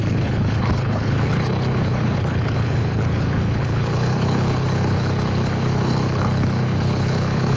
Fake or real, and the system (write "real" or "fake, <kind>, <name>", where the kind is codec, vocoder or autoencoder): fake, codec, HILCodec